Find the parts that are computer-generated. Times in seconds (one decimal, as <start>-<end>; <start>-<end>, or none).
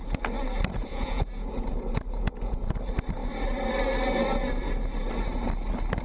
0.9-2.8